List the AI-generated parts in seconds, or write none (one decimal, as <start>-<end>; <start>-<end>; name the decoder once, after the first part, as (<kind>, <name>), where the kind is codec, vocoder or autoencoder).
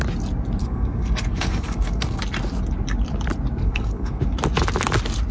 0.6-2.2 (codec, SNAC); 3.6-4.2